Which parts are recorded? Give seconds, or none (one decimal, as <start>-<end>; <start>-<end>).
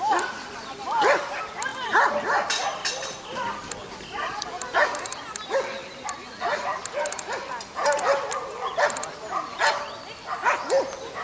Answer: 0.0-11.2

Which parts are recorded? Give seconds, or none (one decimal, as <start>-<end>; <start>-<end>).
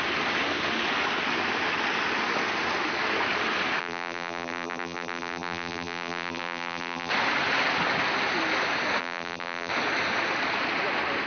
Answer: 0.0-3.8; 7.1-9.0; 9.7-11.3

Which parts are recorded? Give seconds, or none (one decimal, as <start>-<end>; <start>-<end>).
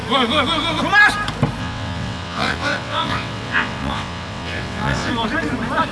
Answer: 0.0-1.6; 5.1-5.9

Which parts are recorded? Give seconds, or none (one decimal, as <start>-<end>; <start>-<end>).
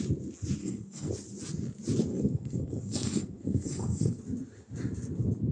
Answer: 0.0-0.6; 1.1-2.1; 4.2-5.5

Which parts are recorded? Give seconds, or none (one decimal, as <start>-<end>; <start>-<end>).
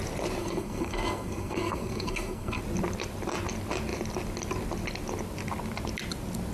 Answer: 0.0-0.4; 2.6-6.5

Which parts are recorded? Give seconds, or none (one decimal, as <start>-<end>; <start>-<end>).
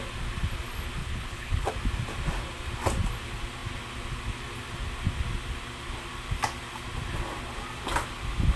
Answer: 0.0-1.0; 1.7-8.6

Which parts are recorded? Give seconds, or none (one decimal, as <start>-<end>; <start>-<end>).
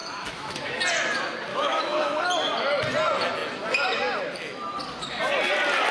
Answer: 0.8-1.5; 2.2-5.9